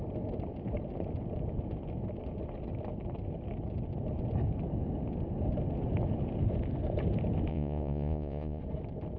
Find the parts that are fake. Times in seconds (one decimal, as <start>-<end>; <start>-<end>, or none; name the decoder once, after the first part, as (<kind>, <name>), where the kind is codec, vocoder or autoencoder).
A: 7.5-8.6 (vocoder, Vocos)